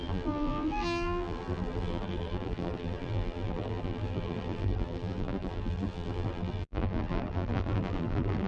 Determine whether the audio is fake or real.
fake